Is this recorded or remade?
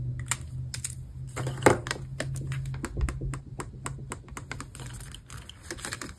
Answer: recorded